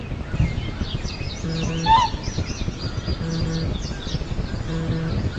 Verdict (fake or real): real